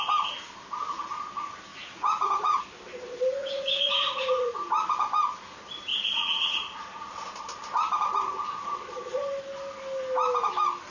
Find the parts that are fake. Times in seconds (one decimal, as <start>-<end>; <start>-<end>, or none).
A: 1.7-2.6; 3.4-4.7; 5.9-6.6